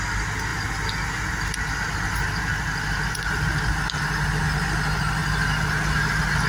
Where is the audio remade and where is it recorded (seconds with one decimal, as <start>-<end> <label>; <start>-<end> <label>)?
0.0-6.5 recorded